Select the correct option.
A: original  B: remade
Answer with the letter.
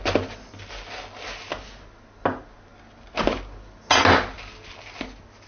A